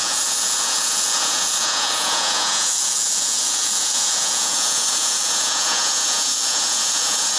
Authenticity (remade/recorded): remade